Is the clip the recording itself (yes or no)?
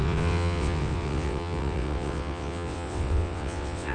no